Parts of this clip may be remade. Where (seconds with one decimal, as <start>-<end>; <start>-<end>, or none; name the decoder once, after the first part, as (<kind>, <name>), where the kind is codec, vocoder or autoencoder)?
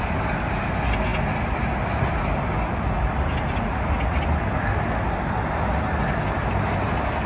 none